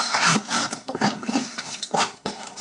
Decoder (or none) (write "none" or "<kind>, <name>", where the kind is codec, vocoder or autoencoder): codec, SNAC